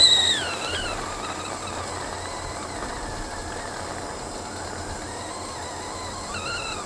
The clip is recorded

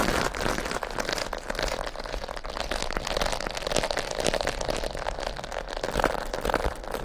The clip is recorded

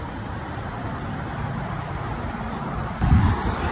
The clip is remade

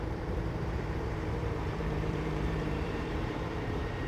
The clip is remade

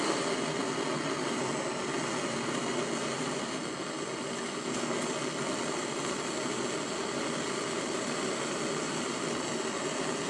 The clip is recorded